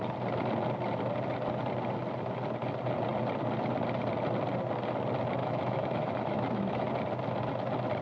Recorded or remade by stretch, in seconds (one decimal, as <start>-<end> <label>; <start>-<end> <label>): 0.0-5.4 recorded; 5.4-6.9 remade; 6.9-8.0 recorded